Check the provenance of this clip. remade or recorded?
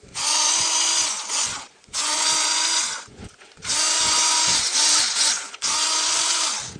remade